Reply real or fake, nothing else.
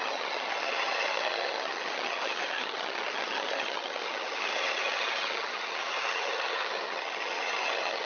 fake